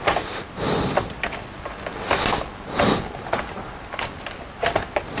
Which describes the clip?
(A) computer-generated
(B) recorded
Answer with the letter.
B